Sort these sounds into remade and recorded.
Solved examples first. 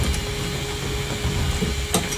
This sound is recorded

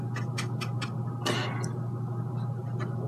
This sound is recorded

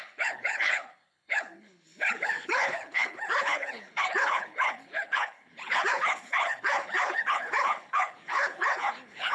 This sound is remade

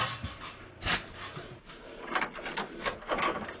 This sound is remade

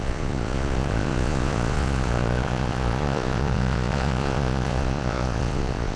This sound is remade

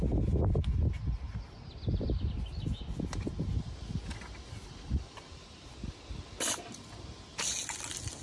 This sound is recorded